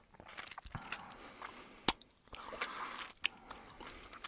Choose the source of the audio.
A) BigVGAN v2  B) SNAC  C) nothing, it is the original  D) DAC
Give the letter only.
C